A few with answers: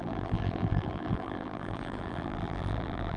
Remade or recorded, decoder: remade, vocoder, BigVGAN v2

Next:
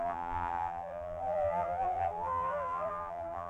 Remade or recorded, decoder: remade, vocoder, BigVGAN v2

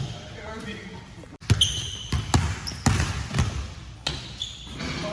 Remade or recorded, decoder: recorded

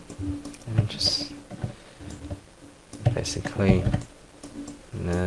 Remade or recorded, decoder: recorded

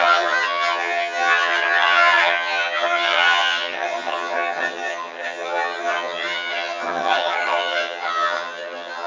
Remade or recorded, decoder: remade, vocoder, HiFi-GAN